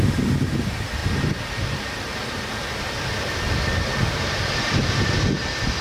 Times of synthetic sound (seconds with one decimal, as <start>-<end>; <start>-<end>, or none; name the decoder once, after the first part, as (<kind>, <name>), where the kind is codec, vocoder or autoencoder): 2.1-4.9 (vocoder, BigVGAN v2)